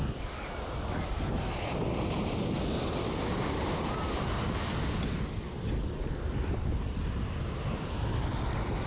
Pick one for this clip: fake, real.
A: real